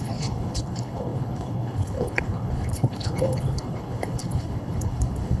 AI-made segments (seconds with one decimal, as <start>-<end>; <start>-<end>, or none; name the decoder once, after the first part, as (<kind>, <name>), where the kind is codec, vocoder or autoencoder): 0.0-5.4 (codec, HILCodec)